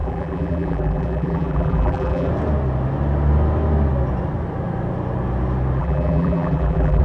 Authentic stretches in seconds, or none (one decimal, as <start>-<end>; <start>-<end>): 2.3-5.8